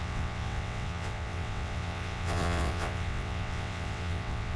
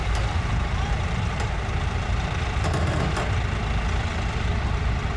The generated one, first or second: first